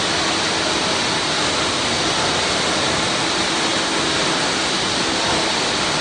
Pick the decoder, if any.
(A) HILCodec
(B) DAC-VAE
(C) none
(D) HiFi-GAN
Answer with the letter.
C